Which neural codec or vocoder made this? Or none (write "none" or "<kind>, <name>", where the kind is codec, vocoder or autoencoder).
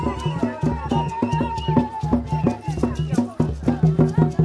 none